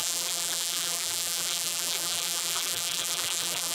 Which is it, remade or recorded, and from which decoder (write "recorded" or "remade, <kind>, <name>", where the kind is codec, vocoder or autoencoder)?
remade, vocoder, BigVGAN v2